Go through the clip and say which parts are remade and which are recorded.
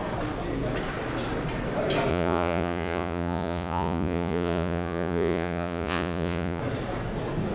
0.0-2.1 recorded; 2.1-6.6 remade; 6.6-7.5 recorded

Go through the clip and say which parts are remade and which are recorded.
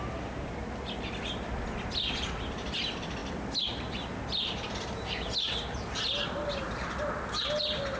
0.0-8.0 recorded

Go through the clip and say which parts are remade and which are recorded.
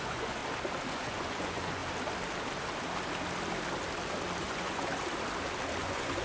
0.0-0.4 remade; 0.4-0.9 recorded; 0.9-1.8 remade; 1.8-4.4 recorded; 4.4-4.9 remade; 4.9-5.8 recorded; 5.8-6.2 remade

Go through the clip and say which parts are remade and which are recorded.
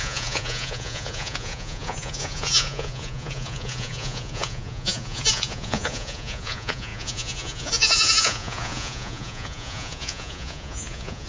0.0-11.3 remade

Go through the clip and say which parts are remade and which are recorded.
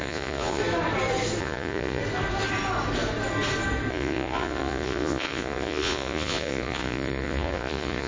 0.0-0.6 remade; 0.6-1.4 recorded; 1.4-2.0 remade; 2.0-3.9 recorded; 3.9-8.1 remade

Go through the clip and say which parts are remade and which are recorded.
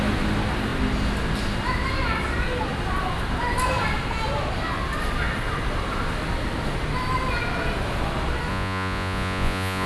0.0-8.5 recorded; 8.5-9.9 remade